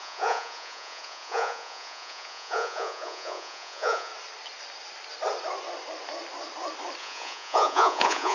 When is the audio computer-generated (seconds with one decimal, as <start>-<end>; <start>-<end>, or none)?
0.0-4.1; 7.0-8.3